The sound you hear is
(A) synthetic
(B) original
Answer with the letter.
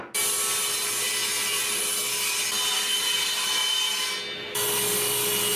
B